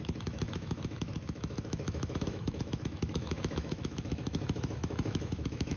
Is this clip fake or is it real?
fake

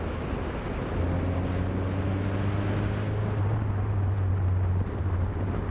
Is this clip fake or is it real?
real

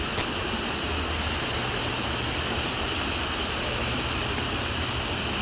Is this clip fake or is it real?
real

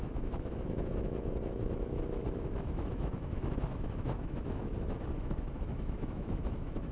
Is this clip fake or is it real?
fake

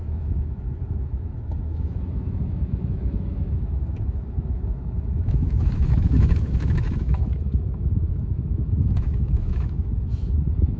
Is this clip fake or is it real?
fake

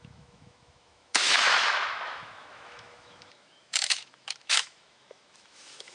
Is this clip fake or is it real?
fake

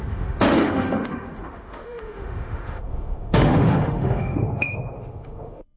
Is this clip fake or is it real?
fake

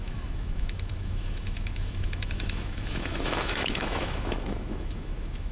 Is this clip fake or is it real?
fake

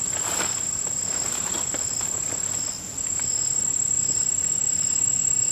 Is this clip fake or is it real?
real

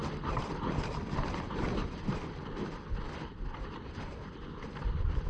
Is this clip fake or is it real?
real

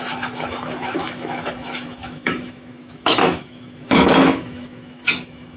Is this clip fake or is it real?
fake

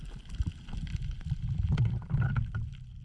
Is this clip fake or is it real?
real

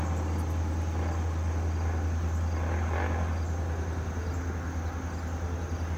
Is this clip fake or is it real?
real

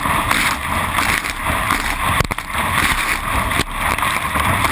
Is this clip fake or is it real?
real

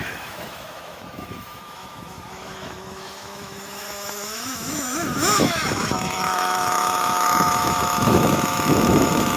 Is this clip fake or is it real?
fake